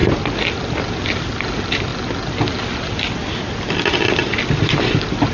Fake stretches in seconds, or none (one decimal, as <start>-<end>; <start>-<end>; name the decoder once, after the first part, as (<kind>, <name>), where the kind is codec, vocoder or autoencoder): none